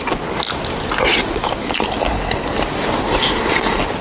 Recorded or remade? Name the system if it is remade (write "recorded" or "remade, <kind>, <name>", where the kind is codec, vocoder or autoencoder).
recorded